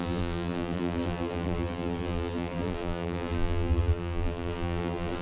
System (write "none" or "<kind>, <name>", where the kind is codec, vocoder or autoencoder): vocoder, BigVGAN v2